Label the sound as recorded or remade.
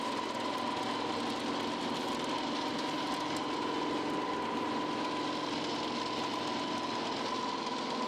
recorded